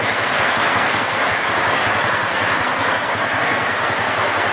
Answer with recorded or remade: remade